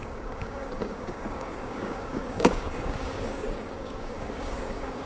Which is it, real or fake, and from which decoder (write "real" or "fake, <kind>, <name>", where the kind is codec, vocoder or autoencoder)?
fake, codec, DAC